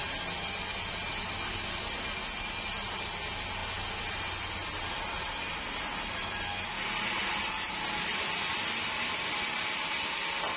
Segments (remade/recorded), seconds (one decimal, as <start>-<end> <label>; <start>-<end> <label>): 0.0-10.6 recorded